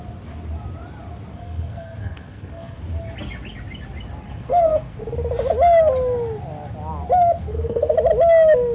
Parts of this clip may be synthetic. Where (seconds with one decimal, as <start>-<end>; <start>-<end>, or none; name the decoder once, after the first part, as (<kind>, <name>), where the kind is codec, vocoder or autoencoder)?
1.3-2.8 (codec, SNAC); 4.3-5.0; 7.4-7.9